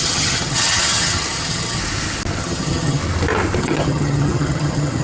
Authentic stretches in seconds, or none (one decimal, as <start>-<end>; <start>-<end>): 1.8-2.4; 3.0-3.6